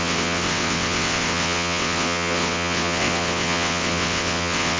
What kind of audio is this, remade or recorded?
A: remade